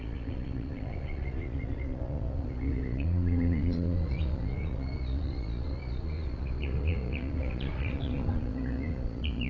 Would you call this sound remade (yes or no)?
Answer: yes